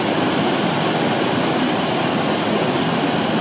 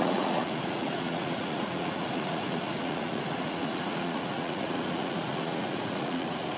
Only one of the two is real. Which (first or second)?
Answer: first